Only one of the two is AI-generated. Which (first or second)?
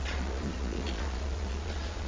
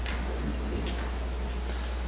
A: first